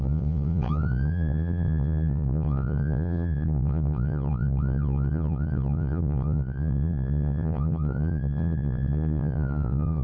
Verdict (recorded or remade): remade